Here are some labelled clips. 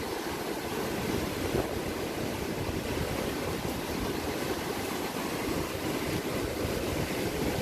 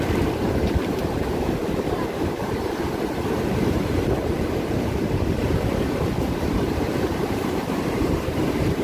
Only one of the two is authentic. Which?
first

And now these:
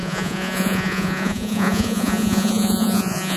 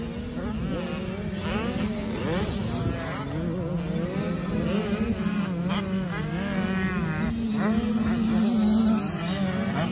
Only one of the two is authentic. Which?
second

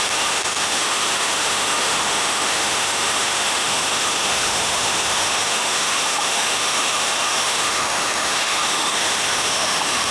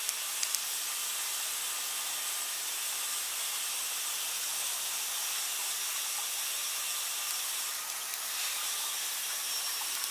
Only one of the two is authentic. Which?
second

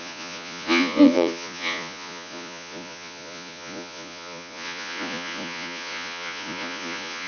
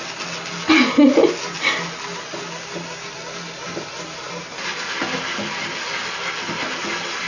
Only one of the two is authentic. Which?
second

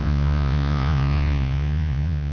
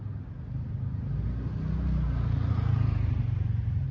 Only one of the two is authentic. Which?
second